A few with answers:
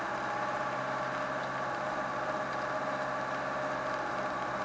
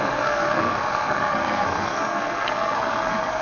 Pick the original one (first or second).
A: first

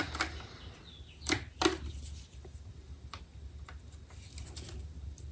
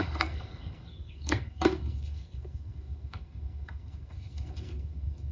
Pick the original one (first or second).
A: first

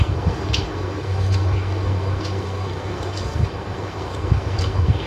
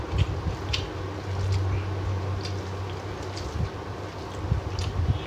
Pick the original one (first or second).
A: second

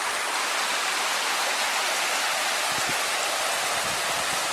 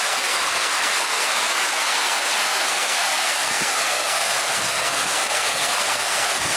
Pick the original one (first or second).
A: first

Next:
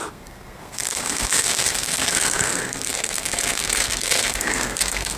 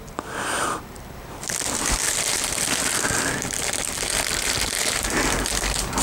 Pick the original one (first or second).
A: second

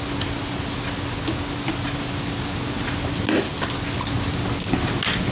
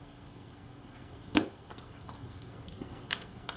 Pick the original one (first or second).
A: first